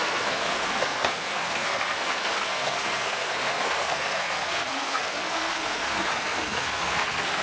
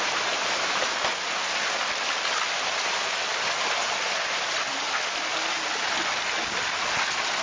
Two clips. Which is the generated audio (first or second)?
first